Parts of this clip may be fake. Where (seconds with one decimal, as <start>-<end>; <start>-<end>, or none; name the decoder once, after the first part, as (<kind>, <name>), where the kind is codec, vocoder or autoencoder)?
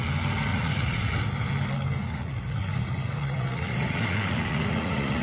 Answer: 0.5-1.1 (vocoder, Vocos); 2.0-5.2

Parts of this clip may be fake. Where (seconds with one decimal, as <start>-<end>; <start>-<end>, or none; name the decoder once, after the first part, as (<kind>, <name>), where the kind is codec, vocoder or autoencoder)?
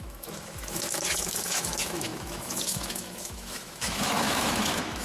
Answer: 0.0-5.0 (autoencoder, DAC-VAE)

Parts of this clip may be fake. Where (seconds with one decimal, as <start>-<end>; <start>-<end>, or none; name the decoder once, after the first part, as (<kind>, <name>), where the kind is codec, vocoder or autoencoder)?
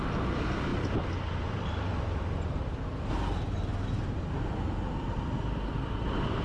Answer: none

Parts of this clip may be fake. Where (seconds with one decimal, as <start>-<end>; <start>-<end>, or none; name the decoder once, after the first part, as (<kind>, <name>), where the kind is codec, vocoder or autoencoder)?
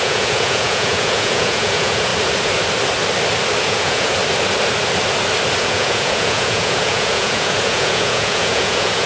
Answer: 0.0-2.1 (vocoder, Vocos); 3.6-4.2; 5.6-9.1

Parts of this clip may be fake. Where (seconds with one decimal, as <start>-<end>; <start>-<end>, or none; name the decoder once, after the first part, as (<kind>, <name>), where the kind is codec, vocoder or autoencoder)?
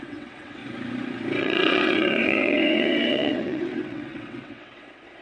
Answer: 0.0-0.6 (vocoder, WaveNeXt); 1.4-5.2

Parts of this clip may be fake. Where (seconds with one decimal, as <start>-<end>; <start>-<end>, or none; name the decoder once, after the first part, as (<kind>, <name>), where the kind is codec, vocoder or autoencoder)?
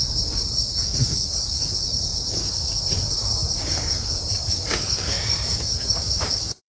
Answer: 0.0-6.7 (codec, DAC)